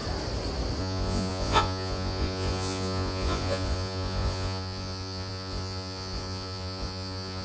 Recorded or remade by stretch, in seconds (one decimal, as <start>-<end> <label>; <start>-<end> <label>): 0.0-0.8 recorded; 0.8-7.4 remade